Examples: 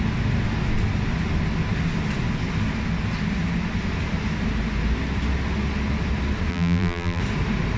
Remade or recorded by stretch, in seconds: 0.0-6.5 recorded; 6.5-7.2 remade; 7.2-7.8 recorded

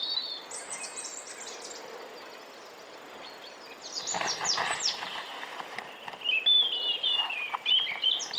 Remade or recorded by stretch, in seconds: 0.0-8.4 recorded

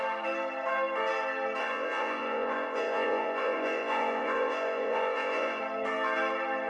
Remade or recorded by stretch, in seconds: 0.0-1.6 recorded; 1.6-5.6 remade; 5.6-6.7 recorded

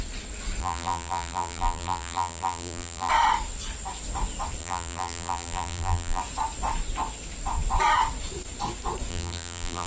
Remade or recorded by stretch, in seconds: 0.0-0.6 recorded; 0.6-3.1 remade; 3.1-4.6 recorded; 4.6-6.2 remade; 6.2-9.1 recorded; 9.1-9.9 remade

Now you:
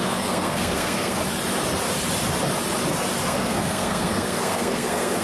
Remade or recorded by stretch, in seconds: 0.0-1.2 remade; 1.2-3.2 recorded; 3.2-5.2 remade

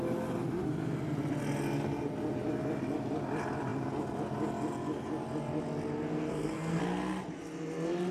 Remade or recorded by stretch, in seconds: 0.0-6.1 recorded; 6.1-6.8 remade; 6.8-8.1 recorded

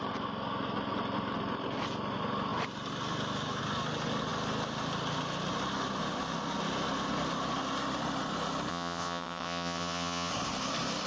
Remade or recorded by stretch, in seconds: 0.0-8.7 recorded; 8.7-10.3 remade; 10.3-11.1 recorded

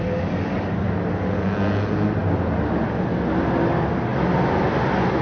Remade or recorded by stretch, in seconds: 0.0-5.2 recorded